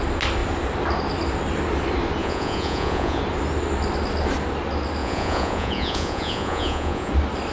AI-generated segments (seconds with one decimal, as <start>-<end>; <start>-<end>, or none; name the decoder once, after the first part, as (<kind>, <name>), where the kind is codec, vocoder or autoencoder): 2.2-3.2 (vocoder, Vocos); 5.0-7.1